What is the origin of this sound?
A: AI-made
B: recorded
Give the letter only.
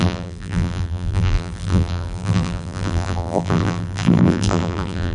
A